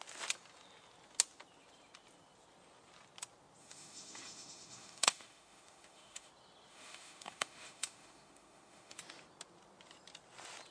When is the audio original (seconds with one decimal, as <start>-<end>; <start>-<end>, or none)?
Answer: 0.0-3.6; 6.3-6.7; 9.0-10.7